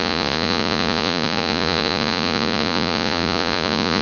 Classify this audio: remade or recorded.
remade